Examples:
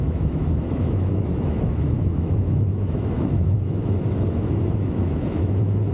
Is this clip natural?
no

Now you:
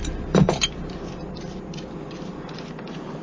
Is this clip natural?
yes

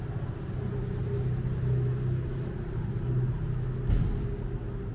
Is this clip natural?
yes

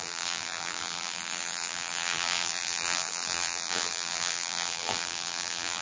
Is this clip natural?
no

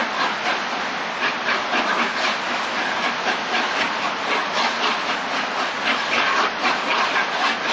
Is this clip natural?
yes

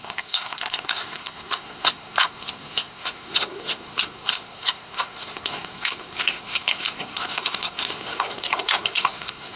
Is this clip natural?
no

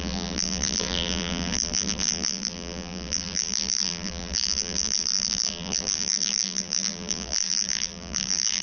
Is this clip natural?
no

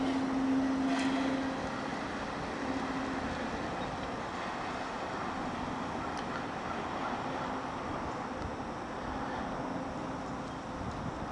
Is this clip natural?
yes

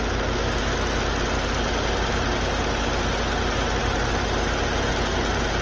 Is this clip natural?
yes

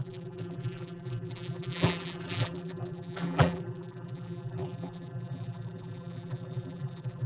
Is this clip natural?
no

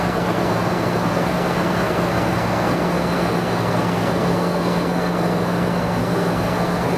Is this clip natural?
no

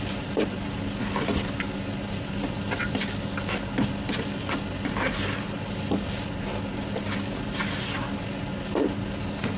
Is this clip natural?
yes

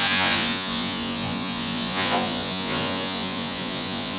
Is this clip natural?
no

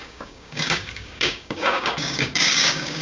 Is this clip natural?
no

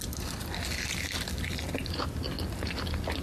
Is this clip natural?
yes